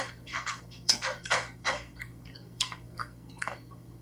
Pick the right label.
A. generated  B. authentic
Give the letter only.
A